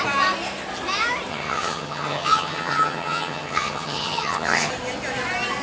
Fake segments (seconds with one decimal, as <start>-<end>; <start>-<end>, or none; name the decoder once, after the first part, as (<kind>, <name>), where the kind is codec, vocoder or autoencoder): 1.3-4.7 (vocoder, HiFi-GAN)